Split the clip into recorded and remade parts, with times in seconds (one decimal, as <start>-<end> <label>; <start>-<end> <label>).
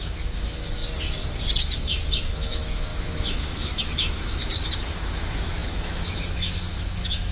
0.0-0.8 remade; 0.8-1.6 recorded; 1.6-7.3 remade